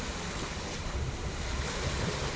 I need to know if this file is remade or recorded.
recorded